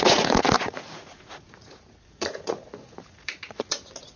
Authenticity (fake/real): fake